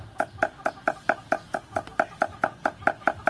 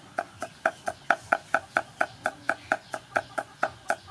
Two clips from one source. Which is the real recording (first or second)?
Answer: first